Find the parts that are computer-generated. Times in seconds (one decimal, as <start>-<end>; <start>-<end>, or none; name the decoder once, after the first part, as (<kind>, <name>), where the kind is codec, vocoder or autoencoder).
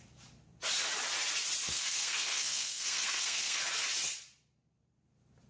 1.7-3.6 (codec, SNAC)